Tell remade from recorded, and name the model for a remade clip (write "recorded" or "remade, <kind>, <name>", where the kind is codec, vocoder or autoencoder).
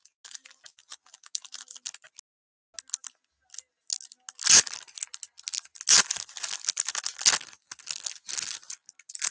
recorded